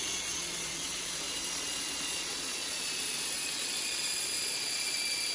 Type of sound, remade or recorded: remade